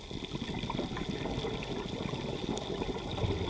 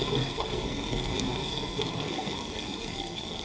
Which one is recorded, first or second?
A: first